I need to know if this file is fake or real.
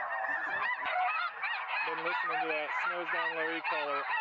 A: real